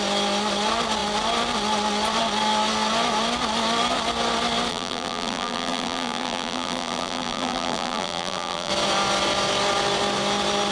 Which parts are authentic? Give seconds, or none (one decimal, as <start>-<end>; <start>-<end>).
0.0-4.7; 8.7-10.7